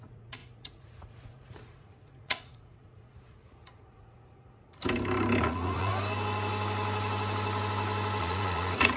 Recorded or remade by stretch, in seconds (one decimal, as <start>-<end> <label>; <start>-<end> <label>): 0.0-4.8 remade; 4.8-5.4 recorded; 5.4-5.9 remade; 5.9-8.2 recorded; 8.2-9.0 remade